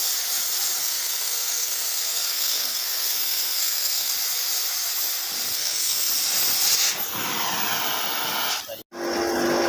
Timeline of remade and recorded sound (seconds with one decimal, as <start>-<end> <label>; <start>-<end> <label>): 0.0-0.8 recorded; 0.8-4.1 remade; 4.1-5.5 recorded; 5.5-6.1 remade; 6.1-9.7 recorded